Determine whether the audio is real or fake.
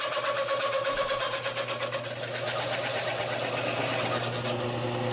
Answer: real